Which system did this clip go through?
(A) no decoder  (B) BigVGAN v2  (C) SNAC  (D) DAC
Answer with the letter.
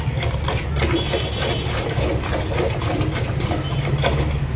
A